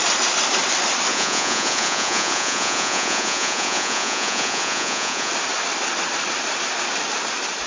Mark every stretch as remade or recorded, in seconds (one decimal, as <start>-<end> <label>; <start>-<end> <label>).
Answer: 0.0-1.1 recorded; 1.1-5.3 remade; 5.3-7.7 recorded